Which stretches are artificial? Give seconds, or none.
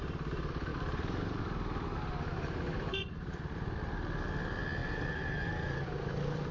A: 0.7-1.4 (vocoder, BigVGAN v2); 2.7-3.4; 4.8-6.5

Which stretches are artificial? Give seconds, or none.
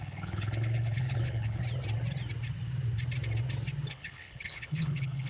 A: 0.0-1.6 (codec, HILCodec); 3.9-5.3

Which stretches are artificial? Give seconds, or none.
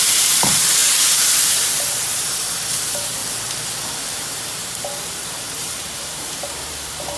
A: 0.0-3.2 (vocoder, BigVGAN v2); 4.2-7.2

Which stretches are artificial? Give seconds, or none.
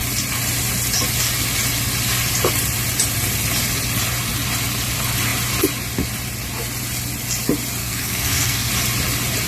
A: 7.8-8.7 (codec, SNAC)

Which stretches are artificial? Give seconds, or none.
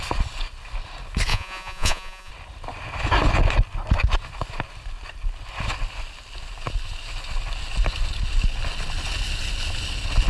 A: 1.3-2.3 (vocoder, Vocos)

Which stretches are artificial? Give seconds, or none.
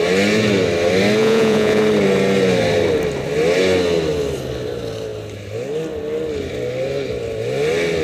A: 1.2-1.8 (vocoder, Vocos)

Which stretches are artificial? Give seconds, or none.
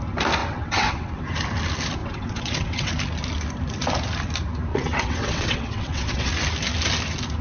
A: 0.4-1.2 (vocoder, WaveNeXt); 2.0-2.9; 4.7-6.3